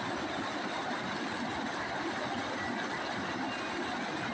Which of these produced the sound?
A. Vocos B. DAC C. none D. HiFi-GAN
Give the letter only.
C